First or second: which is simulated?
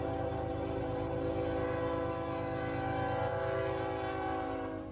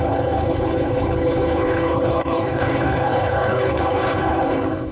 second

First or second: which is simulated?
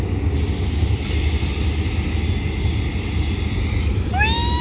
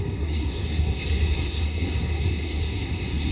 second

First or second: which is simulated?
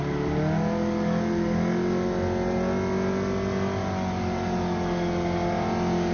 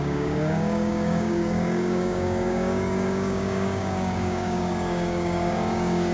second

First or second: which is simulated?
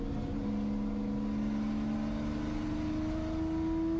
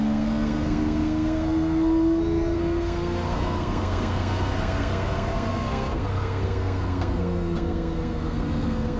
second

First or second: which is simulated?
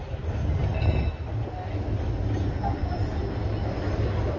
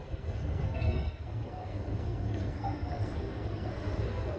second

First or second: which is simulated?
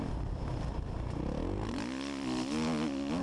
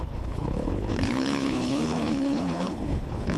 second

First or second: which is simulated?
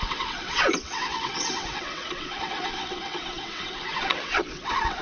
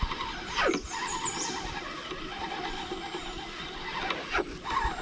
first